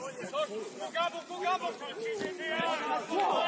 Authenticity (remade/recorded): recorded